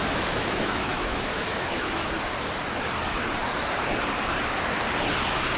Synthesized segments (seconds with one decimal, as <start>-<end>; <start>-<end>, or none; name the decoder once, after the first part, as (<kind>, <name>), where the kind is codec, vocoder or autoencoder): 0.0-2.1 (autoencoder, DAC-VAE)

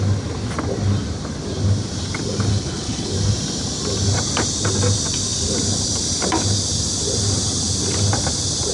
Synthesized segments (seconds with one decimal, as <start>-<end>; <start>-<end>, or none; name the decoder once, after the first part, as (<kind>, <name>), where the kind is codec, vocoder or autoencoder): 2.5-3.1 (codec, HILCodec)